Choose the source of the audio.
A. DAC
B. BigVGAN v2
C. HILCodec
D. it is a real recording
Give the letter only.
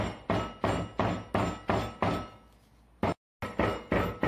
D